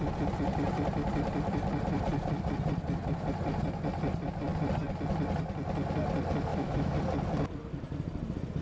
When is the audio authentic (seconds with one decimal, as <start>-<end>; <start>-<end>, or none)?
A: 0.0-6.5; 7.0-8.6